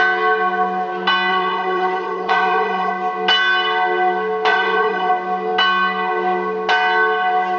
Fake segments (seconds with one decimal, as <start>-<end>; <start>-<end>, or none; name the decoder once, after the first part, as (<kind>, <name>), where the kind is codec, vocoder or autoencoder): 1.3-2.9 (vocoder, WaveNeXt); 4.5-5.1